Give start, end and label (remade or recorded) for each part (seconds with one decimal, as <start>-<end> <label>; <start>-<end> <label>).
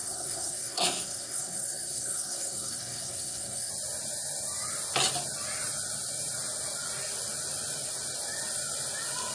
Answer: 0.0-3.7 remade; 3.7-9.3 recorded